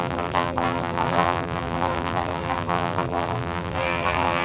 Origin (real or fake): fake